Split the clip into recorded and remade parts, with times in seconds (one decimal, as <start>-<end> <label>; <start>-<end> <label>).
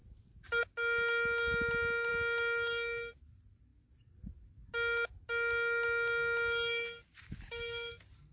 0.0-8.3 recorded